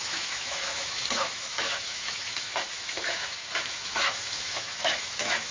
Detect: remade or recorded remade